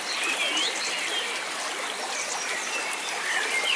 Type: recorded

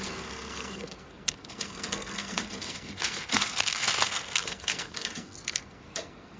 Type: remade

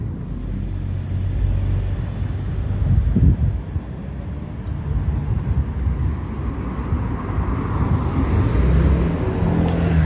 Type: recorded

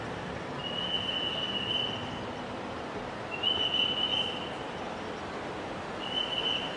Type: recorded